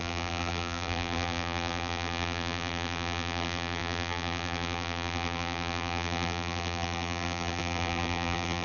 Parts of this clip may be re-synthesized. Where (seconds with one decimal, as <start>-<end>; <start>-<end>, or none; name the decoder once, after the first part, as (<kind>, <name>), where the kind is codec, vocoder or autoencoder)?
0.0-8.6 (vocoder, BigVGAN v2)